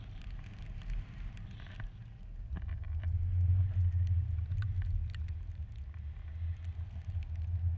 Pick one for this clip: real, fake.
real